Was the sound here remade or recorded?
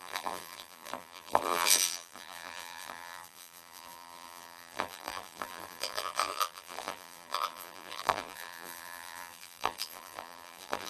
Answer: remade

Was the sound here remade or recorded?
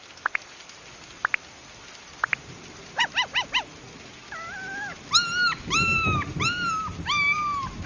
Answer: recorded